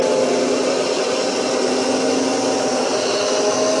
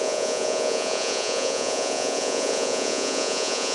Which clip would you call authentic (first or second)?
first